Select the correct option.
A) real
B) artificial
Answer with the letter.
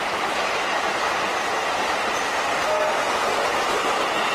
A